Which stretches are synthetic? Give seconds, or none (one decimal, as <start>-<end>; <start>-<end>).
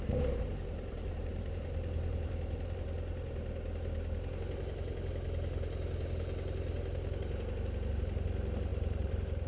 1.0-2.3; 8.7-9.5